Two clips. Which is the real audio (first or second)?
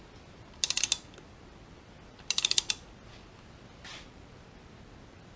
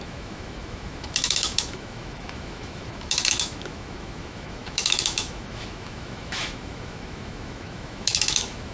first